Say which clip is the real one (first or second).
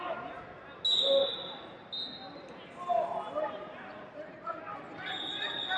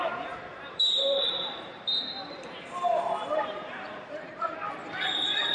first